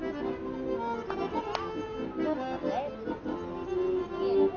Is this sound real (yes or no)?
yes